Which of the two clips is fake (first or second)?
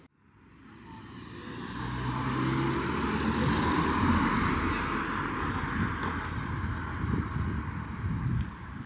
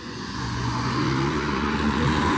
second